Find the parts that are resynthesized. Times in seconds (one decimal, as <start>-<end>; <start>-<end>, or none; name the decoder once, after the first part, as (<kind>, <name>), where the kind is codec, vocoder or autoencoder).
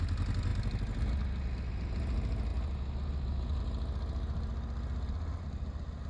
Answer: none